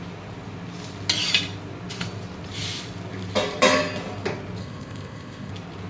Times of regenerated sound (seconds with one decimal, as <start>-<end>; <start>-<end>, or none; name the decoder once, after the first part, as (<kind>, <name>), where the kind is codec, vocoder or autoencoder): 4.6-5.5 (codec, ZipCodec)